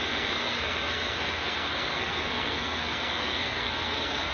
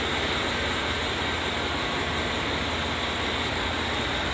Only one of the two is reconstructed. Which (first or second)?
first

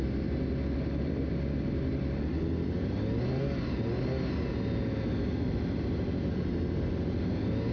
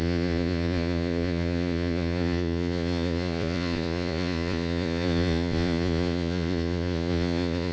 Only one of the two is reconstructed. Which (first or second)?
second